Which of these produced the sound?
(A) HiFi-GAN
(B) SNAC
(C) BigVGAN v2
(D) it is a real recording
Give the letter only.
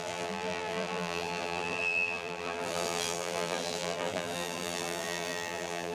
C